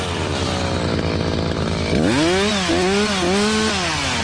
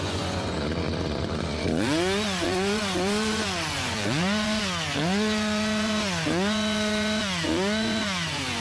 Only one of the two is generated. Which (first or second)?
second